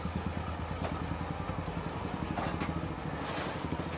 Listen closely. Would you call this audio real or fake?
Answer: real